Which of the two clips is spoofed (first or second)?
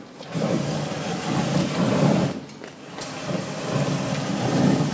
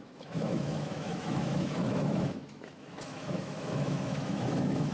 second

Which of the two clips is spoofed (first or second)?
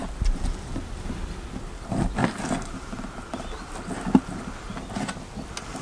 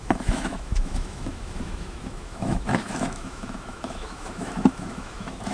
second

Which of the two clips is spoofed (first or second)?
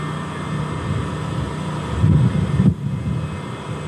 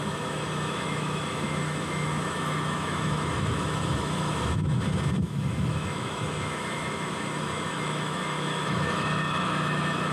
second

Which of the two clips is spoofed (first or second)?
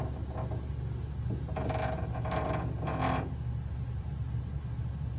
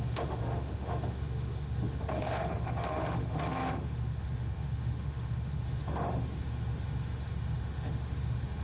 second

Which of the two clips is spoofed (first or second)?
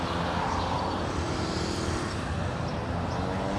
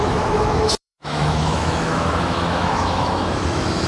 second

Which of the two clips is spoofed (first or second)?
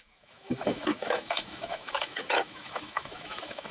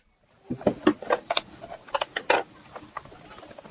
first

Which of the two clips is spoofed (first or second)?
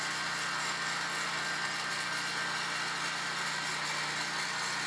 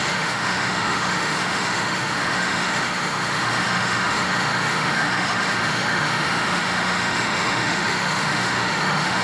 second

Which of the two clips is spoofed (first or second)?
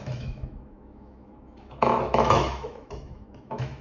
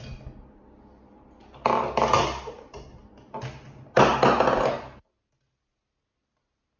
first